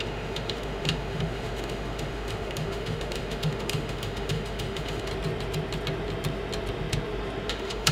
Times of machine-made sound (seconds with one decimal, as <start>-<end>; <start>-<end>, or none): 0.0-5.1; 7.5-7.9